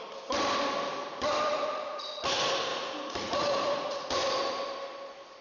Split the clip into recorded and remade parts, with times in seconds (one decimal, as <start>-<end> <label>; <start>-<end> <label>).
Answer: 0.0-1.5 recorded; 1.5-2.1 remade; 2.1-2.7 recorded; 2.7-4.2 remade; 4.2-5.4 recorded